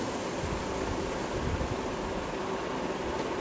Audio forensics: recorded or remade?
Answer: recorded